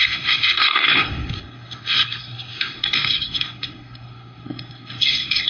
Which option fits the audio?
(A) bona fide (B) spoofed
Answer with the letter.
B